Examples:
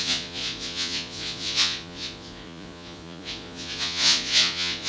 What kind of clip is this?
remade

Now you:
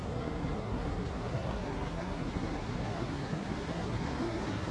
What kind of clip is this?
remade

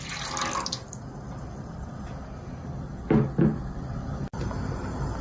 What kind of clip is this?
recorded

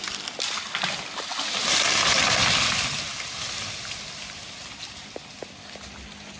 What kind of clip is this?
recorded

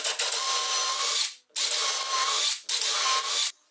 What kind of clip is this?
recorded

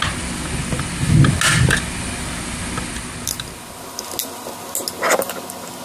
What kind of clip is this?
recorded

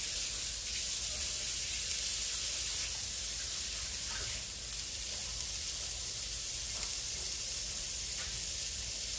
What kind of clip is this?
recorded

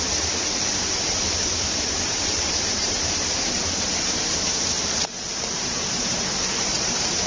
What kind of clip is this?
remade